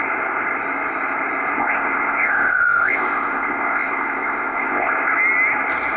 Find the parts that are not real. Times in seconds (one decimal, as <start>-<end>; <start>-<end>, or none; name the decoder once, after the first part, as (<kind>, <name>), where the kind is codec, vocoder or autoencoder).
1.6-4.9 (codec, ZipCodec)